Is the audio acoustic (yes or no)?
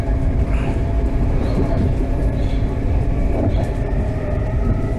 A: no